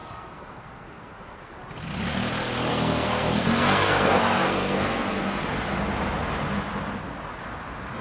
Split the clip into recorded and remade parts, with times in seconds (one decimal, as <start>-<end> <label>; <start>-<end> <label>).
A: 0.0-1.5 remade; 1.5-2.7 recorded; 2.7-5.4 remade; 5.4-8.0 recorded